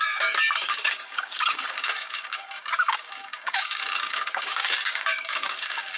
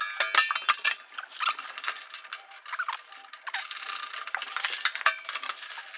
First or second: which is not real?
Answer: first